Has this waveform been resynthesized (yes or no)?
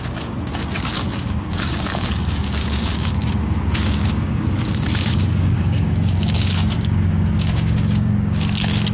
yes